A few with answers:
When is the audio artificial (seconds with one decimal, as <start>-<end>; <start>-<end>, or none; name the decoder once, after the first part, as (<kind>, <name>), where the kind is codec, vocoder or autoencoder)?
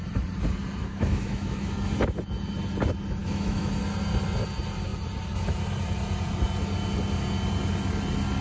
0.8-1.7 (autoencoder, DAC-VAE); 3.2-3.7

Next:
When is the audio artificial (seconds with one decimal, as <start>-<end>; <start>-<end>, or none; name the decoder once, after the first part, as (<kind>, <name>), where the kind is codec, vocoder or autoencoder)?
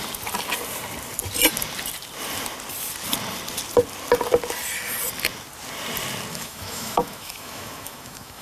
6.3-8.4 (autoencoder, DAC-VAE)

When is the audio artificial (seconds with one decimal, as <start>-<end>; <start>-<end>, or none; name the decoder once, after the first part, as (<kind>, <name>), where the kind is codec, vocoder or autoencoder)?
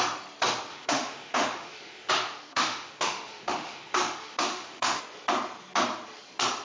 0.7-2.1 (autoencoder, DAC-VAE); 2.5-5.0